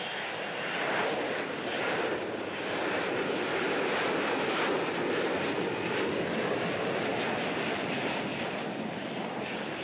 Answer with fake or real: real